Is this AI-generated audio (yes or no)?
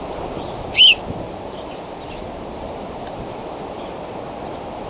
no